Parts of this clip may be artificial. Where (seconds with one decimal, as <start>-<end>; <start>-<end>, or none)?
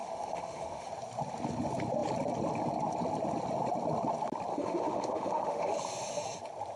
0.0-0.9; 4.5-5.8